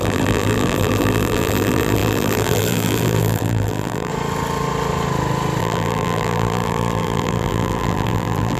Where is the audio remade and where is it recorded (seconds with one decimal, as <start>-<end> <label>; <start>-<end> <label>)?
0.0-4.1 remade; 4.1-5.6 recorded; 5.6-8.6 remade